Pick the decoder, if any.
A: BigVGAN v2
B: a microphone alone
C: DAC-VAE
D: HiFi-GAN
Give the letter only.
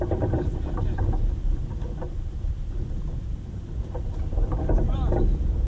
A